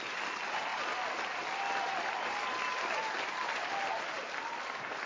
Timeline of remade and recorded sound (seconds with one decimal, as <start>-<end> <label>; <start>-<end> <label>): 0.0-5.1 recorded